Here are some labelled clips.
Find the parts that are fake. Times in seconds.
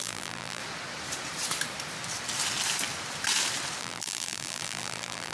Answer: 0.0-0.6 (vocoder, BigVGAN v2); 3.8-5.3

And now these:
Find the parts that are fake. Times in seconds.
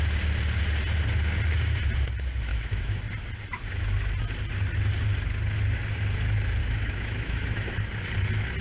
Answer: 2.5-3.0 (autoencoder, DAC-VAE); 6.6-7.9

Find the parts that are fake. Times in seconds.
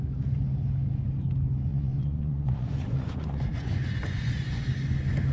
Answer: 1.7-4.6 (vocoder, Vocos)